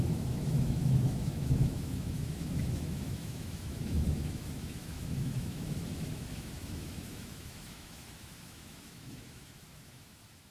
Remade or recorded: remade